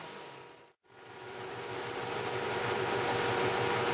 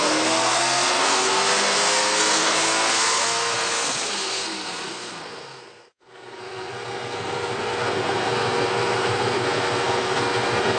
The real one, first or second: first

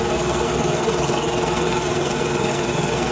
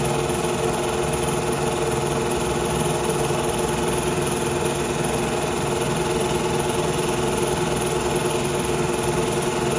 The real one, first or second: second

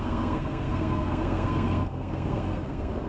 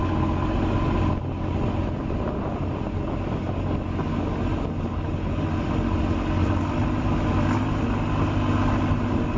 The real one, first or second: second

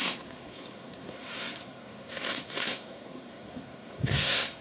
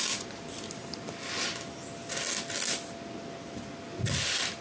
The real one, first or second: second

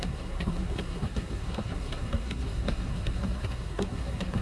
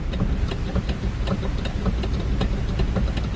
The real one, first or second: second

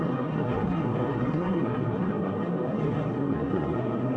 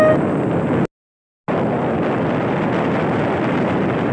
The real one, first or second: second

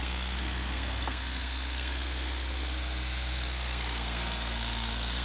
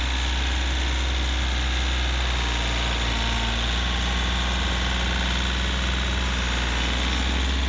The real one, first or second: second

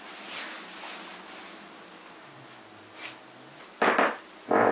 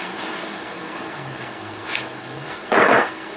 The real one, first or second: first